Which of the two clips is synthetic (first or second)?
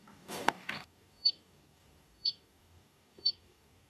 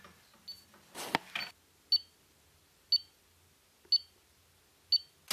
first